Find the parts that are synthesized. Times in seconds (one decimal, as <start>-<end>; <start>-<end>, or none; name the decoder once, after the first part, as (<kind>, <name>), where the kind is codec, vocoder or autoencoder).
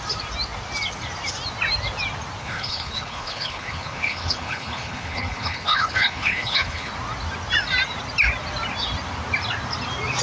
2.4-6.9 (codec, HILCodec)